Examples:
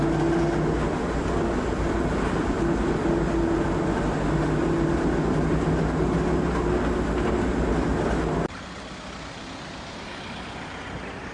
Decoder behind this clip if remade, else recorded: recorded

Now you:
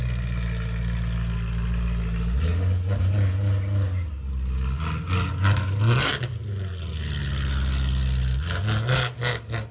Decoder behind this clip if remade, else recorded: recorded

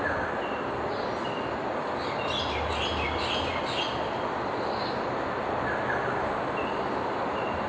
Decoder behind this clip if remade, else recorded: recorded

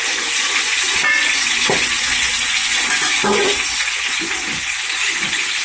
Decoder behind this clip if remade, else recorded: remade, vocoder, Vocos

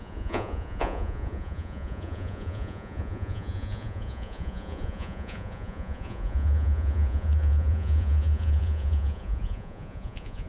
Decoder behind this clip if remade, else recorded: remade, vocoder, Vocos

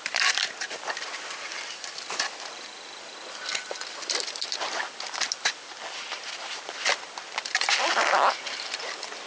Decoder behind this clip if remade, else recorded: recorded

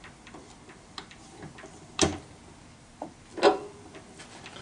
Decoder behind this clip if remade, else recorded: recorded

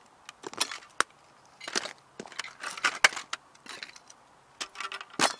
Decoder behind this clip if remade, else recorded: recorded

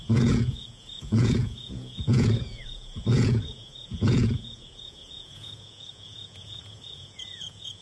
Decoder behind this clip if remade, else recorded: remade, vocoder, Vocos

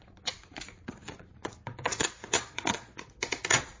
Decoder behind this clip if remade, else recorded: remade, vocoder, Vocos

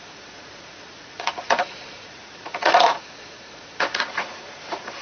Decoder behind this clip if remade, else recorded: remade, vocoder, Vocos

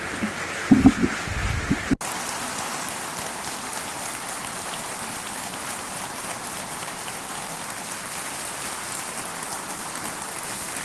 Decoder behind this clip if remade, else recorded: recorded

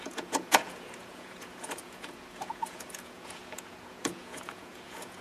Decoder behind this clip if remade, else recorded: remade, vocoder, Vocos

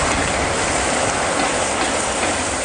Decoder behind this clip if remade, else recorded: recorded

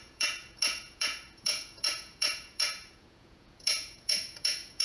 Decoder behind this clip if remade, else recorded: remade, vocoder, Vocos